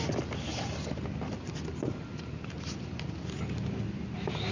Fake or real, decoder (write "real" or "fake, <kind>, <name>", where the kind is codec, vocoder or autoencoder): real